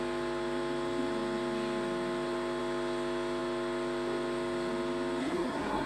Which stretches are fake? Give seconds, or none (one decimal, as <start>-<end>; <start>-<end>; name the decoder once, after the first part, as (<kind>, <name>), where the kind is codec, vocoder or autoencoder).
5.2-5.9 (codec, SNAC)